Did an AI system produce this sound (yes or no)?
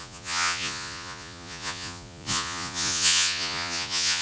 yes